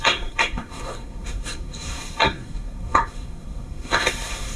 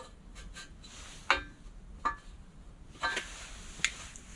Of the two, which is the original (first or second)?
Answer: second